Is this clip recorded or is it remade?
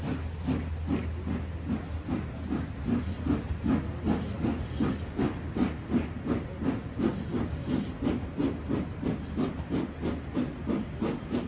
recorded